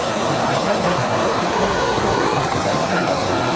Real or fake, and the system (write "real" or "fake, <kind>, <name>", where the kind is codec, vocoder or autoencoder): fake, codec, SNAC